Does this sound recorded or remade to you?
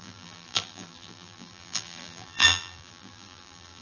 remade